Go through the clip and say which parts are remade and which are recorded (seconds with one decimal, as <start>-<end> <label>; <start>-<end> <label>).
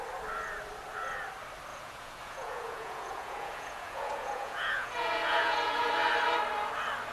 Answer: 0.0-1.7 recorded; 1.7-5.9 remade; 5.9-7.1 recorded